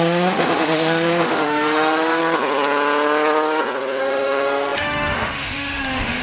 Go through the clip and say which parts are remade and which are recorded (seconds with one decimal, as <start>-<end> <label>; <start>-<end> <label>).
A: 0.0-2.2 remade; 2.2-4.0 recorded; 4.0-6.2 remade